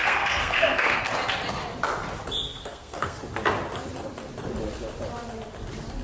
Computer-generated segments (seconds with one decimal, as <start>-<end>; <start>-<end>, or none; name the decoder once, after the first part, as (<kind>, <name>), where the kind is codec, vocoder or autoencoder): 0.0-1.1 (codec, SNAC); 2.6-3.2